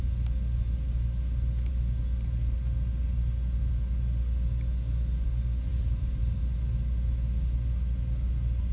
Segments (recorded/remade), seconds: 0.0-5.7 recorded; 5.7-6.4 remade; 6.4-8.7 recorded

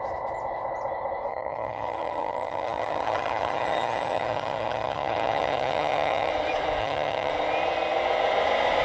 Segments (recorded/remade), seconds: 0.0-1.3 recorded; 1.3-6.3 remade; 6.3-6.8 recorded; 6.8-7.3 remade; 7.3-8.8 recorded

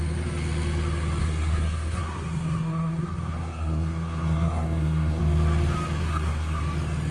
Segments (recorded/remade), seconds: 0.0-1.2 recorded; 1.2-5.2 remade; 5.2-6.0 recorded; 6.0-6.6 remade; 6.6-7.1 recorded

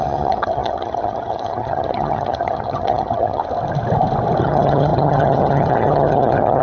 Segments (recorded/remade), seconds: 0.0-3.4 remade; 3.4-4.4 recorded; 4.4-6.6 remade